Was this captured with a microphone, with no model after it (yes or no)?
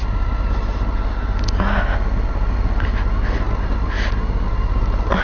yes